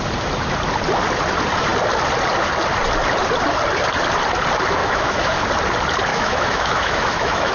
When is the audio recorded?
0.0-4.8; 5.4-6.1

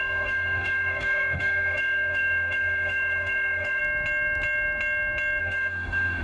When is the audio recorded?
3.8-5.4